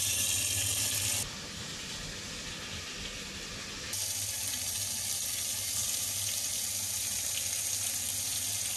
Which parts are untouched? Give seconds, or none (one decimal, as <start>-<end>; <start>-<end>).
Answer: 0.0-8.8

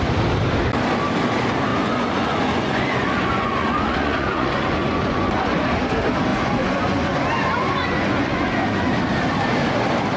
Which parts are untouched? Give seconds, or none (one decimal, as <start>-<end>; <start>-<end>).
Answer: 0.0-1.7; 5.8-6.3; 9.0-10.2

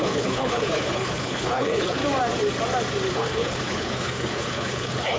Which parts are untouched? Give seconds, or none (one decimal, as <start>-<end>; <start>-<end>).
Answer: 2.0-3.1

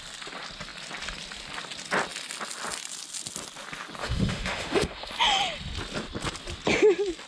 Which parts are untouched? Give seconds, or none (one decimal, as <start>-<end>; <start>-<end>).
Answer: 0.0-4.0; 5.1-7.3

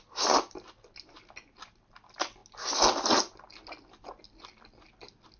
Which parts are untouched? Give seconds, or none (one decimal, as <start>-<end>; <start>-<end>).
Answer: 0.0-5.4

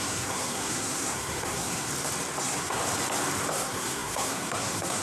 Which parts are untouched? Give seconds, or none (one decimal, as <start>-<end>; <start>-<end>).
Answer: 1.9-2.4; 2.8-3.5